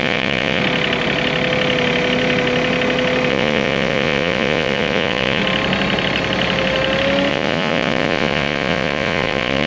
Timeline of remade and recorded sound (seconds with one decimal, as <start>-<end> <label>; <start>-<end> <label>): 0.0-0.6 remade; 0.6-3.3 recorded; 3.3-5.4 remade; 5.4-7.3 recorded; 7.3-9.7 remade